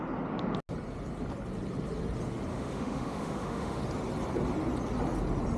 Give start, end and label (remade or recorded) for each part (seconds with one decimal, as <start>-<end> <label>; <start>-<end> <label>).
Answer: 0.0-2.5 recorded; 2.5-3.8 remade; 3.8-5.6 recorded